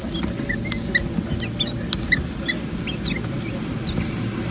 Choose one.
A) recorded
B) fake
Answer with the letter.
A